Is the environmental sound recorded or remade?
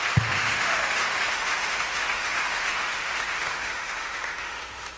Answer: remade